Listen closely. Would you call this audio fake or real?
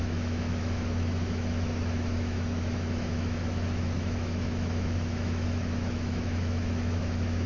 fake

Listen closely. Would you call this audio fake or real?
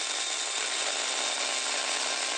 real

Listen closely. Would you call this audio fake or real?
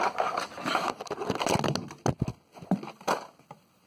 real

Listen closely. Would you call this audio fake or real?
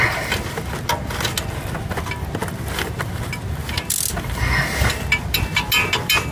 real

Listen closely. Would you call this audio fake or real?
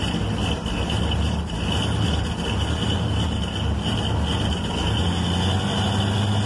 real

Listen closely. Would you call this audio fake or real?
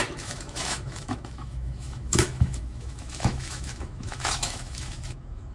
fake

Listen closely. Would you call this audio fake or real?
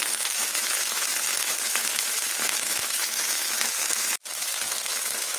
fake